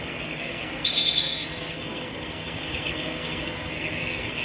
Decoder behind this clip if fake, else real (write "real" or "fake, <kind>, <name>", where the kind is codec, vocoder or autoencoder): fake, codec, SNAC